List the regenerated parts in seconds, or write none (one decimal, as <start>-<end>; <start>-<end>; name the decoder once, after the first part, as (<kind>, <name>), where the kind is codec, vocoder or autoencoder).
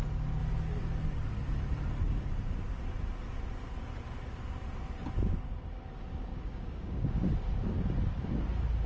6.3-7.3 (codec, DAC)